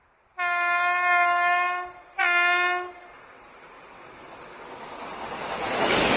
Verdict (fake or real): real